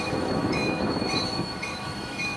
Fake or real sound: fake